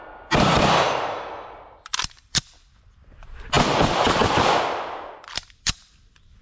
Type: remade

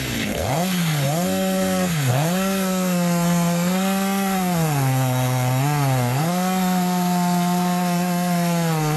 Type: remade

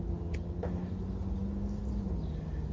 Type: recorded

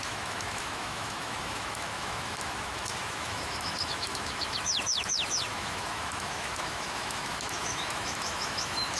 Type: remade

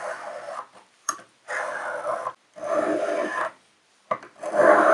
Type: recorded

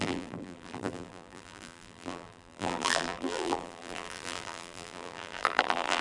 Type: remade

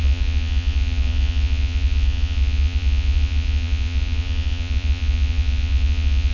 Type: remade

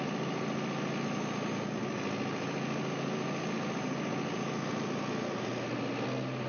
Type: recorded